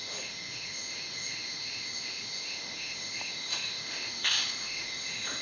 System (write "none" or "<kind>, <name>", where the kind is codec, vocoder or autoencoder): autoencoder, DAC-VAE